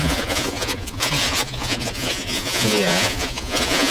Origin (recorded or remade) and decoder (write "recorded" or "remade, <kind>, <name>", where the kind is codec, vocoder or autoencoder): remade, vocoder, Vocos